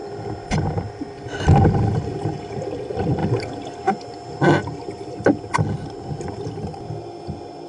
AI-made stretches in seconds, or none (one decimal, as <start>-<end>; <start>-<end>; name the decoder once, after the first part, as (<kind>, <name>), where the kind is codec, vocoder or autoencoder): none